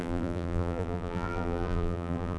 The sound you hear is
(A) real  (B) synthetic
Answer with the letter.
B